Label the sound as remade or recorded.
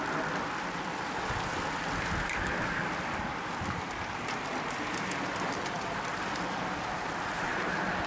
recorded